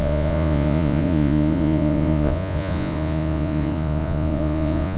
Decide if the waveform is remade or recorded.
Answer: remade